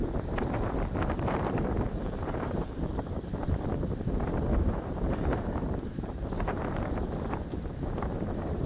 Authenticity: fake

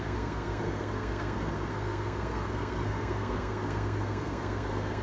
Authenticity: fake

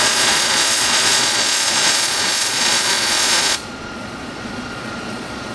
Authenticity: fake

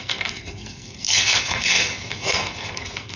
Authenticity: fake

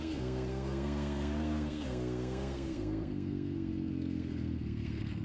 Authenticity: fake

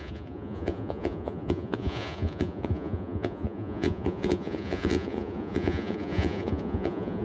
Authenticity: fake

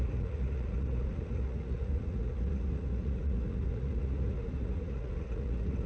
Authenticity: fake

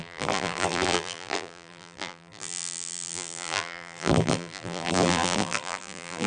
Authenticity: fake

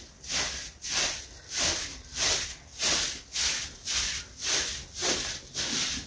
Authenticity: real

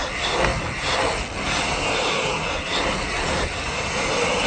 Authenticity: real